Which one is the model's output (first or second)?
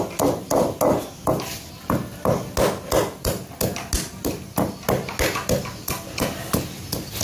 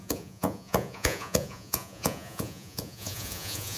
second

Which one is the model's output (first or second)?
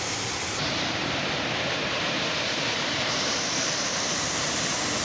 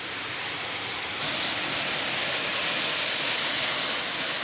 first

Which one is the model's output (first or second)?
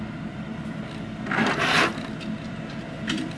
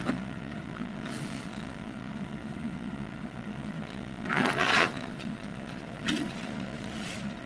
second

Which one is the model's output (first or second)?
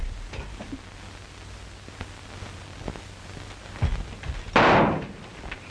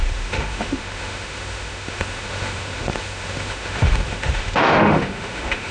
second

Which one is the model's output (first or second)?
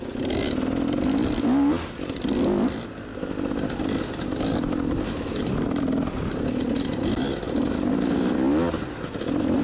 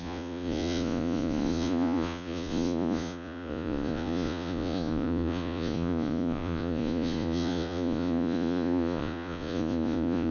second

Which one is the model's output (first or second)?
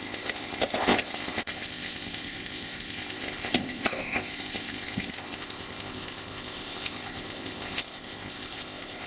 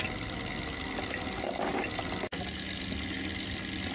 first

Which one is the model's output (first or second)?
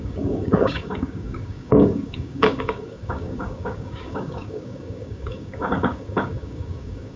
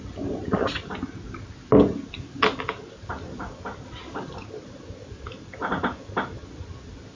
first